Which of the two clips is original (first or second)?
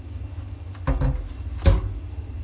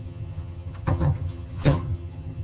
first